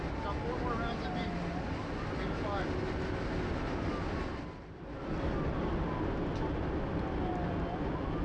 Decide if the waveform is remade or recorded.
recorded